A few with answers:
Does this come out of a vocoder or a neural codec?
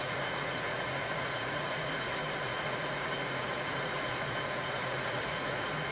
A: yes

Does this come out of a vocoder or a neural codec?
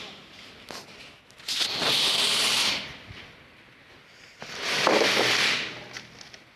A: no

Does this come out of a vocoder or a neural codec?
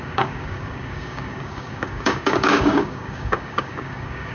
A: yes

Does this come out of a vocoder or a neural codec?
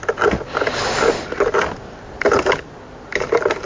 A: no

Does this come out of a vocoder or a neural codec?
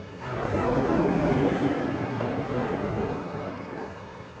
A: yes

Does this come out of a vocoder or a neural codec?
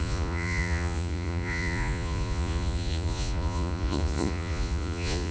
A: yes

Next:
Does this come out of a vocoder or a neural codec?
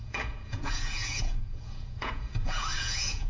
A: yes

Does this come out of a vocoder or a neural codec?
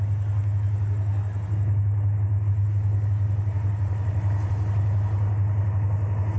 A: no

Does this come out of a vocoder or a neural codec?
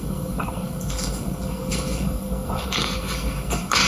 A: yes